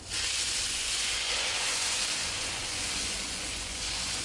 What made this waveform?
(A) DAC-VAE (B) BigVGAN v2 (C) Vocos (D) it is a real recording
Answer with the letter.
C